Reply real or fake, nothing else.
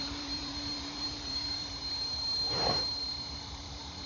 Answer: fake